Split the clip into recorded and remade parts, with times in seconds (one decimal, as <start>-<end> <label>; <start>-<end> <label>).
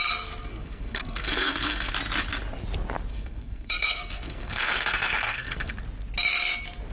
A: 0.0-0.5 recorded; 0.5-1.9 remade; 1.9-3.1 recorded; 3.1-5.7 remade; 5.7-6.9 recorded